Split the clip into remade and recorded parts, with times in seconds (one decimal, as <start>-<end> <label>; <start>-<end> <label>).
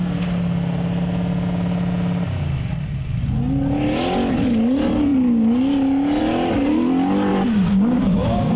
0.0-7.3 recorded; 7.3-8.6 remade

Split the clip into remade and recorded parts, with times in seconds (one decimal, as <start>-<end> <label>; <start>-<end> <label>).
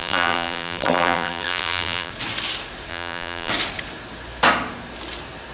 0.0-2.1 remade; 2.1-2.9 recorded; 2.9-3.5 remade; 3.5-5.5 recorded